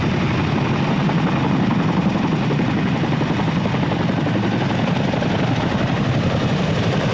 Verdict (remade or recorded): recorded